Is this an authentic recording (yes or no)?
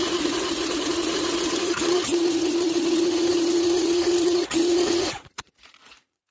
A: no